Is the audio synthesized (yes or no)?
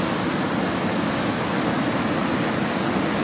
no